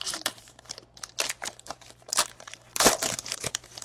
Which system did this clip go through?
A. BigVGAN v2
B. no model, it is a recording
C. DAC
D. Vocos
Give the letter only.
A